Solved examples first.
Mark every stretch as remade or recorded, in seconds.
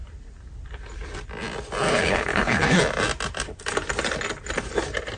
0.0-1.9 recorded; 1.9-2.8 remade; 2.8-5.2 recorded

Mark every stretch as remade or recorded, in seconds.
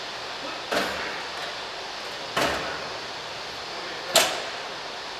0.0-5.2 recorded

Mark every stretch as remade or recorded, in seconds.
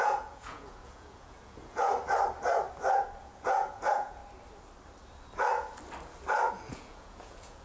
0.0-1.9 remade; 1.9-3.2 recorded; 3.2-4.2 remade; 4.2-6.5 recorded; 6.5-7.6 remade